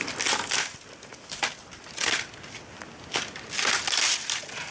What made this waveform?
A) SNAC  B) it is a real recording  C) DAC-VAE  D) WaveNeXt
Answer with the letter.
B